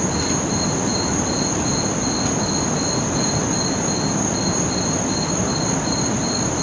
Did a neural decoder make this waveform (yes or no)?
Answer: no